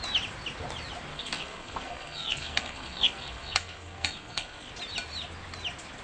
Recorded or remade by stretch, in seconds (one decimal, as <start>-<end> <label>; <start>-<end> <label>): 0.0-1.1 recorded; 1.1-4.7 remade; 4.7-6.0 recorded